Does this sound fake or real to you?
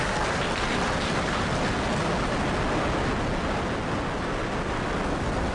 real